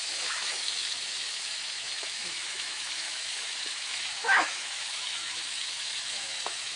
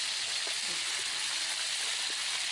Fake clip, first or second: first